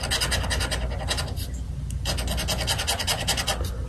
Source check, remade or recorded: recorded